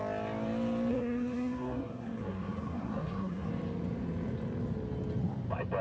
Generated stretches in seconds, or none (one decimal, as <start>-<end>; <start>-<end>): 0.9-3.5